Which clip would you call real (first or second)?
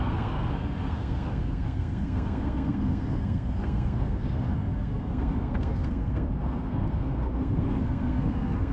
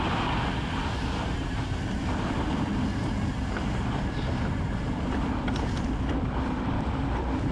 second